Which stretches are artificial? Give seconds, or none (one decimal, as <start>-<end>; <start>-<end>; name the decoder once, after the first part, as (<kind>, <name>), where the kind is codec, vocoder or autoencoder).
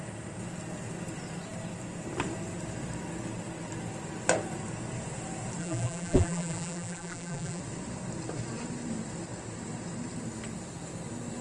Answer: 5.6-7.6 (vocoder, BigVGAN v2)